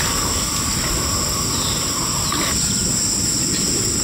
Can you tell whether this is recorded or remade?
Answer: recorded